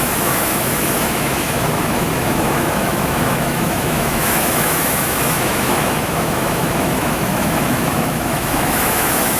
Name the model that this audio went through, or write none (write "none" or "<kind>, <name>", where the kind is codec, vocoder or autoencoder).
autoencoder, DAC-VAE